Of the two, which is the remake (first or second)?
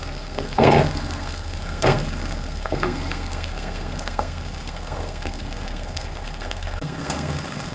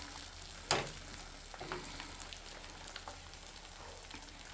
first